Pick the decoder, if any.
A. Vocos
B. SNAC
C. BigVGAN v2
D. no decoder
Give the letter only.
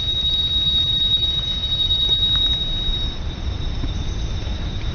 C